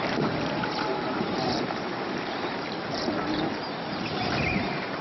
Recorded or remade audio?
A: remade